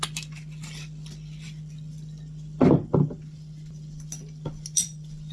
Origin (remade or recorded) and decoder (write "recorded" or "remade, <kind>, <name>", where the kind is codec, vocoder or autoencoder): recorded